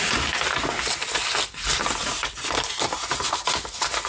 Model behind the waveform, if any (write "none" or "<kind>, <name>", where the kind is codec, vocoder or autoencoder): none